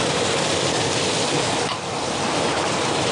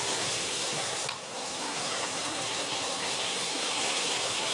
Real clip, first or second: first